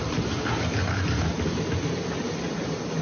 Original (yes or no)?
yes